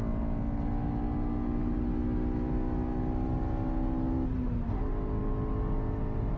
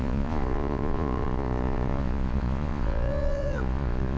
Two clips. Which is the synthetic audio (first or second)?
second